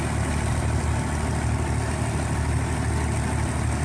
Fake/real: real